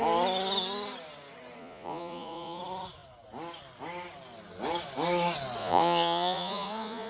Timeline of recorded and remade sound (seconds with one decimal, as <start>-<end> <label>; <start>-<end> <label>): 0.0-1.6 recorded; 1.6-2.6 remade; 2.6-5.6 recorded; 5.6-7.1 remade